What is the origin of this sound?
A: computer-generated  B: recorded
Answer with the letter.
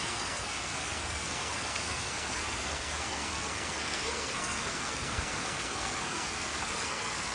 A